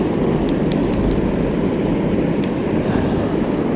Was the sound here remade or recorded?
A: recorded